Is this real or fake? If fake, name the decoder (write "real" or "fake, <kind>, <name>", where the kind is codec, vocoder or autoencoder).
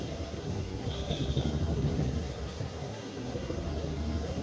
fake, codec, SNAC